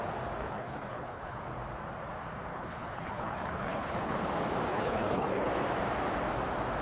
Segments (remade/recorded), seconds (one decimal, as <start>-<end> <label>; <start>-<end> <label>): 0.0-0.4 recorded; 0.4-1.4 remade; 1.4-2.5 recorded; 2.5-4.2 remade; 4.2-4.7 recorded; 4.7-5.5 remade; 5.5-6.8 recorded